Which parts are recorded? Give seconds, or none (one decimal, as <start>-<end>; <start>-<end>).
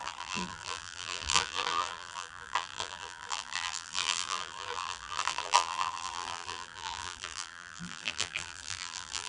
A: none